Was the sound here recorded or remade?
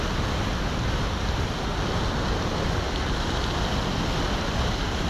recorded